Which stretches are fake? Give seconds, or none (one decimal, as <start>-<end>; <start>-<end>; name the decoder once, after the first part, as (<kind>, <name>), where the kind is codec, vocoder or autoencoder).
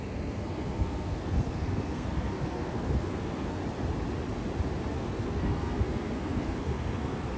0.0-3.6 (codec, SNAC); 4.9-7.4